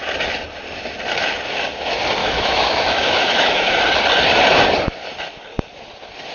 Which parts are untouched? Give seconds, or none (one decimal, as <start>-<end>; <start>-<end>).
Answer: 0.0-2.2; 3.8-6.3